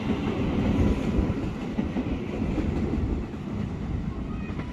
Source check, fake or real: real